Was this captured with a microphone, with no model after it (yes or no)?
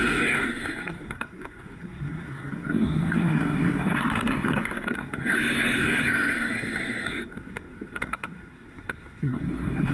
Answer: no